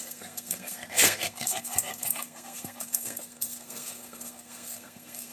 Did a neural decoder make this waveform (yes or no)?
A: yes